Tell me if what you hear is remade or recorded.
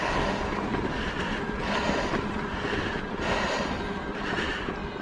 recorded